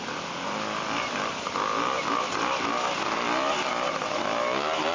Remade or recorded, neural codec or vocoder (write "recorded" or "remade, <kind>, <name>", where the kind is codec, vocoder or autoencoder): recorded